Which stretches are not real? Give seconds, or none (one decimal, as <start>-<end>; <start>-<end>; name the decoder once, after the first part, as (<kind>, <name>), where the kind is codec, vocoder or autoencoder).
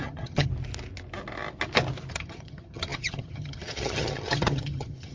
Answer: 0.0-0.5 (vocoder, HiFi-GAN); 2.1-5.1